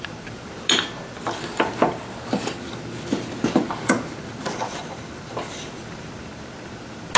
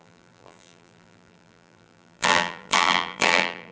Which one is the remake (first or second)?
second